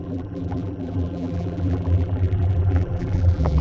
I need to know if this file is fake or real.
fake